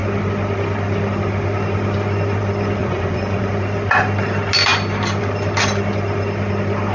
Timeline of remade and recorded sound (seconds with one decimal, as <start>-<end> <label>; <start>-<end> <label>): 0.0-2.8 recorded; 2.8-3.5 remade; 3.5-6.9 recorded